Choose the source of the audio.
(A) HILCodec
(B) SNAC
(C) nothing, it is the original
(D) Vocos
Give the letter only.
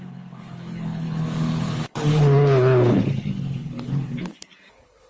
A